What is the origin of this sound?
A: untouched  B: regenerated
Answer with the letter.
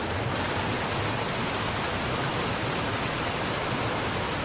A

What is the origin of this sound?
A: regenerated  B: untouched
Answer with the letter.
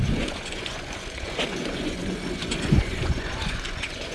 A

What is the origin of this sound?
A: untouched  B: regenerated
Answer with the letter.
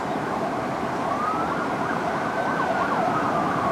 B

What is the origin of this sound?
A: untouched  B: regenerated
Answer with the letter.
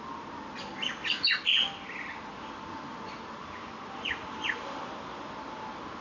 A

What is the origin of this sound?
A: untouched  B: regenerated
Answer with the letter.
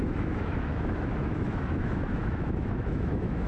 B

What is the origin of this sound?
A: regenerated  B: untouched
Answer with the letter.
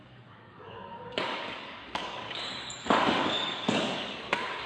A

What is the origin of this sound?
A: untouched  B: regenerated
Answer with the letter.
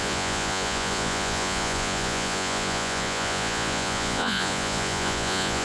B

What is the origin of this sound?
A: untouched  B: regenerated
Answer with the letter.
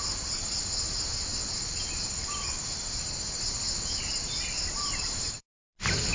A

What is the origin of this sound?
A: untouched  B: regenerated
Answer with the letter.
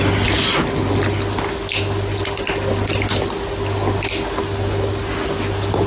A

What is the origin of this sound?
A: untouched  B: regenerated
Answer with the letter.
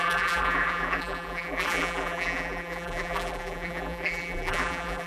B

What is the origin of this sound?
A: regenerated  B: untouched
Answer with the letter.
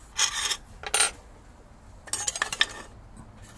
B